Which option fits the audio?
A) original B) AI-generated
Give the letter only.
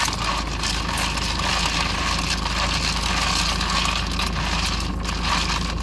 A